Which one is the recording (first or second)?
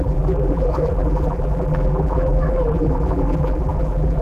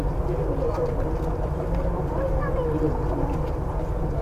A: second